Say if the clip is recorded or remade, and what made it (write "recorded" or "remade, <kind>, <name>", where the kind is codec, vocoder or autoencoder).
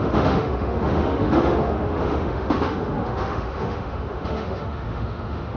remade, autoencoder, DAC-VAE